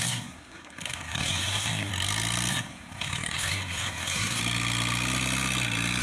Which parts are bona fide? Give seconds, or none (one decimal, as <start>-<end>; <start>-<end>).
1.9-2.5; 4.4-6.0